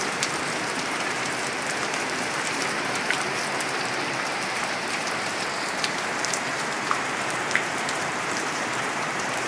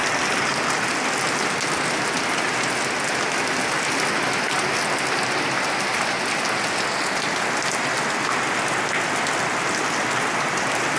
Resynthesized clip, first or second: first